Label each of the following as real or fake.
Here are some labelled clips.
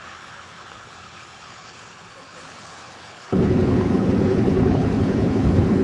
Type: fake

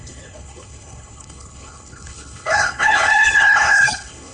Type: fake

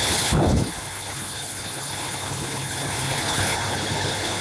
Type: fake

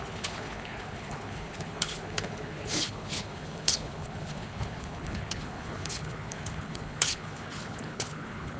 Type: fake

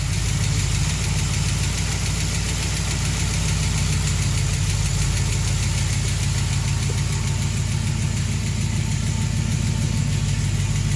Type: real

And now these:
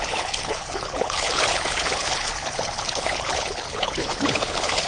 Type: fake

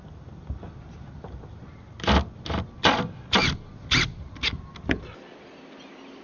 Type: real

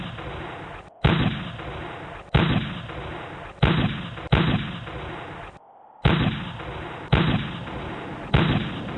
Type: real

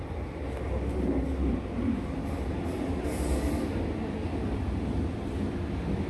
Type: real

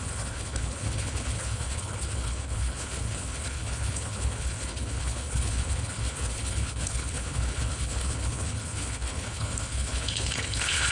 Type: fake